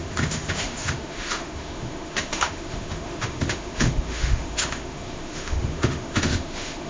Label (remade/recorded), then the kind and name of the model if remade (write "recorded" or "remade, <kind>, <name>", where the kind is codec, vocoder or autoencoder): remade, autoencoder, DAC-VAE